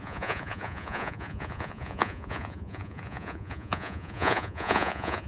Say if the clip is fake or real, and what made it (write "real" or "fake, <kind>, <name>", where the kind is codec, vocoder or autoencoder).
fake, vocoder, Vocos